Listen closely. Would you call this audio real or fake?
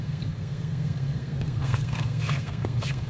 fake